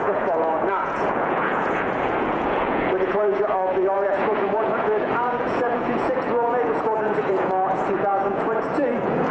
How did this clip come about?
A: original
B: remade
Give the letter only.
B